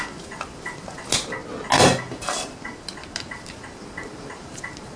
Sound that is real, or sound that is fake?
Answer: real